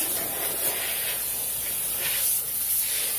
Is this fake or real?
real